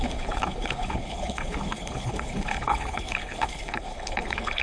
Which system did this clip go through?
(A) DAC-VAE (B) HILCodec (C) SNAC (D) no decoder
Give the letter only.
B